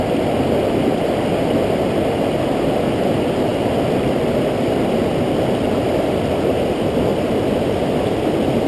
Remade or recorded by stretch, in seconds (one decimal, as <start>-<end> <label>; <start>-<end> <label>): 0.0-8.7 recorded